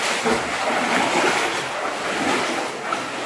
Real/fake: real